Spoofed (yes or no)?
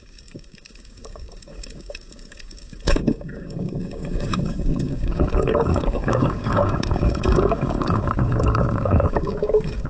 yes